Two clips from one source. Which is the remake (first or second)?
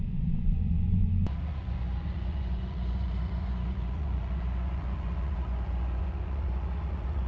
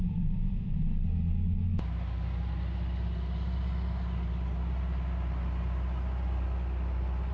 first